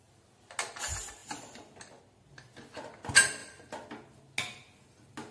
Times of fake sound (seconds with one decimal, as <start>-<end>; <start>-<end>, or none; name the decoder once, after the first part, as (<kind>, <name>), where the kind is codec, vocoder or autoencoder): none